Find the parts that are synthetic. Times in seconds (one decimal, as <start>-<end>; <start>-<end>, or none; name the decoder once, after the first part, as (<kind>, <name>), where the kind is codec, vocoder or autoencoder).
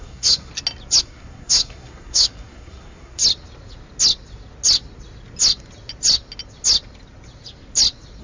0.0-0.5 (codec, SNAC); 1.0-3.2